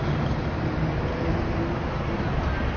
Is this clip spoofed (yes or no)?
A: no